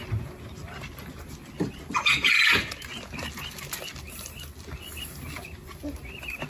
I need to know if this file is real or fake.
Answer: real